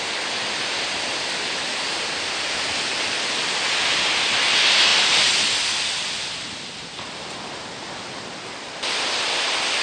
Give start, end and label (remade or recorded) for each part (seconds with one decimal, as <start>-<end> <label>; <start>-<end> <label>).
0.0-9.8 recorded